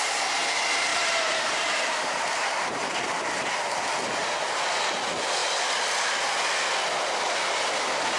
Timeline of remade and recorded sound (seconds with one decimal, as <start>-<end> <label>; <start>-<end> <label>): 0.0-0.9 recorded; 0.9-3.3 remade; 3.3-8.2 recorded